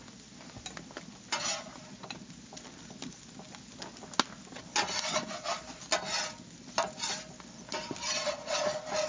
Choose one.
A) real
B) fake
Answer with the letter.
A